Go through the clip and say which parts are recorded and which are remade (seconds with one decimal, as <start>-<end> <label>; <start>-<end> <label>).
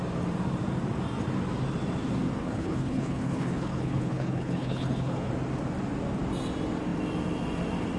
0.0-2.4 recorded; 2.4-5.3 remade; 5.3-8.0 recorded